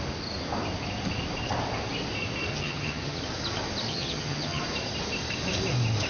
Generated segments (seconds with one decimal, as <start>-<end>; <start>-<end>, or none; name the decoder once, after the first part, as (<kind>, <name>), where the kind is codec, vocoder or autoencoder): 2.5-3.2 (vocoder, HiFi-GAN); 3.9-4.6